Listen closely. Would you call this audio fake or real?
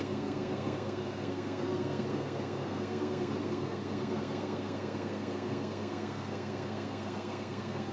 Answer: fake